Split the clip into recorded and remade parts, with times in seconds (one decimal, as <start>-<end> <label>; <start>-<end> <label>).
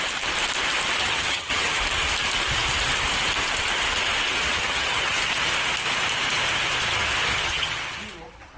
0.0-1.0 recorded; 1.0-1.8 remade; 1.8-4.4 recorded; 4.4-5.2 remade; 5.2-7.3 recorded; 7.3-7.8 remade; 7.8-8.6 recorded